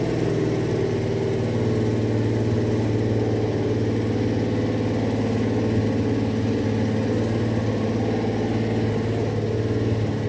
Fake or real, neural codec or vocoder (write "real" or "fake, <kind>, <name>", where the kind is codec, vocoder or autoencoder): real